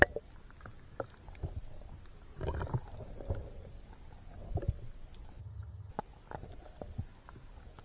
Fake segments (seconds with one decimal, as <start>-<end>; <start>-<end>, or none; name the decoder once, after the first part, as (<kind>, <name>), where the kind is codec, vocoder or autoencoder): 5.4-5.9 (vocoder, HiFi-GAN)